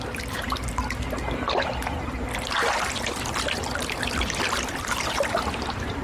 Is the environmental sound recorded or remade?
recorded